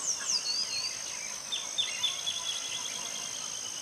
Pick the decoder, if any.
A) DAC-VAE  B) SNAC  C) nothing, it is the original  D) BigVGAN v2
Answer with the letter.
C